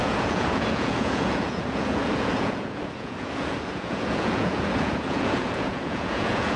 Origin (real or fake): fake